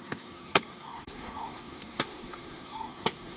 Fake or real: fake